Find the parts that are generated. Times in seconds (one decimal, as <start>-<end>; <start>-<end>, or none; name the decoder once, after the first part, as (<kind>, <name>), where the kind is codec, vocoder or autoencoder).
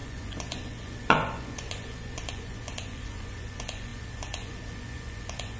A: 0.0-5.6 (vocoder, Vocos)